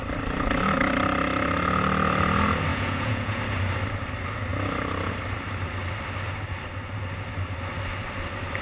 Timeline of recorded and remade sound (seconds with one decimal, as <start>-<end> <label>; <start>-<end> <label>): 0.0-2.7 recorded; 2.7-3.4 remade; 3.4-8.6 recorded